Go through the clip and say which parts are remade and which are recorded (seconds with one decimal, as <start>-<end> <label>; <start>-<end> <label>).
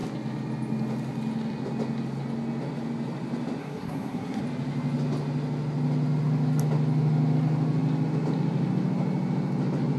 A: 0.0-3.6 recorded; 3.6-4.4 remade; 4.4-10.0 recorded